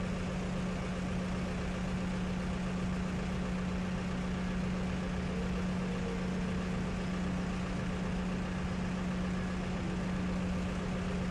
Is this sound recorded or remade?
recorded